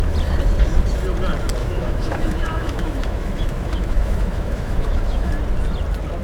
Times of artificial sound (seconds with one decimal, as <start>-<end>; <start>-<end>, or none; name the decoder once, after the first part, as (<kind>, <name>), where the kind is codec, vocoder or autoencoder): 1.6-5.3 (autoencoder, DAC-VAE)